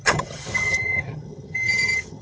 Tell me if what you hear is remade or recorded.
remade